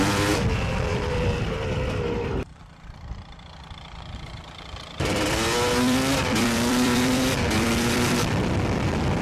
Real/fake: fake